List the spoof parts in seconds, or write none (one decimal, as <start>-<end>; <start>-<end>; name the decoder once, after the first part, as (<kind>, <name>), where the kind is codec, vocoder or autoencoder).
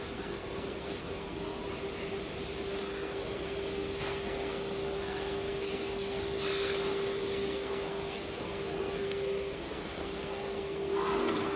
0.0-1.6 (codec, SNAC); 2.8-11.6